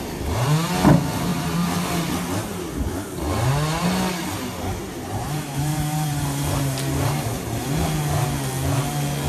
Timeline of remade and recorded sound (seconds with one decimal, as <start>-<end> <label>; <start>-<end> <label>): 0.0-1.3 recorded; 1.3-2.1 remade; 2.1-4.8 recorded; 4.8-7.8 remade; 7.8-9.3 recorded